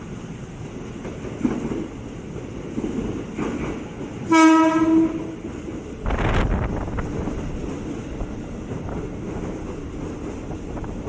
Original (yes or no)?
yes